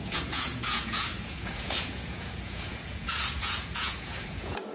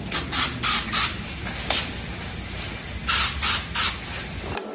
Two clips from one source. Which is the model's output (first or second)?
first